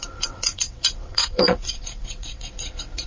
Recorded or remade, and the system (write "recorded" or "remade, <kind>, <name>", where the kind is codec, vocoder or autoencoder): remade, vocoder, WaveNeXt